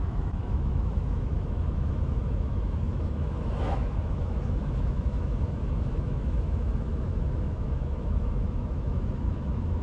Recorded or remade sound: remade